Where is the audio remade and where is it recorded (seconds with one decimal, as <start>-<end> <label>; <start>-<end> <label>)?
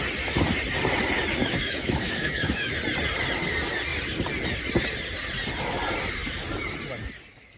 0.0-1.4 recorded; 1.4-2.7 remade; 2.7-7.6 recorded